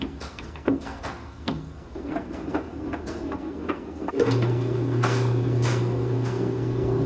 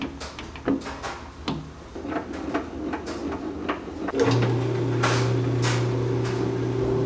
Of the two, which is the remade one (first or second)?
first